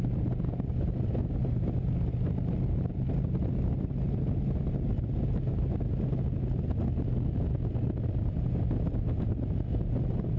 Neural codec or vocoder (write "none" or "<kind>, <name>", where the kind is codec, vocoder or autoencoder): none